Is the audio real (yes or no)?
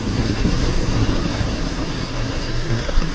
no